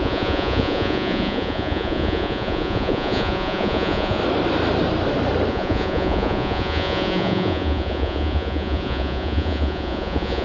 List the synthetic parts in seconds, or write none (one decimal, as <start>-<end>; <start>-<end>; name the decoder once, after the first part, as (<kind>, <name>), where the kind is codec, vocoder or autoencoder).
0.0-4.2 (vocoder, Vocos); 5.5-10.4